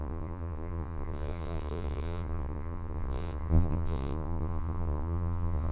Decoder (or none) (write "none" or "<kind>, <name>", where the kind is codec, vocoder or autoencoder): vocoder, Vocos